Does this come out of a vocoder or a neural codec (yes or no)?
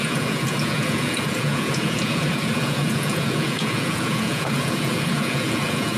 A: yes